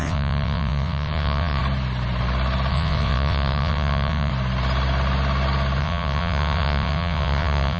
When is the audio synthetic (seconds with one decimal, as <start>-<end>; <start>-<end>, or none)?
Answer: 0.0-1.6; 2.7-4.3; 5.8-7.8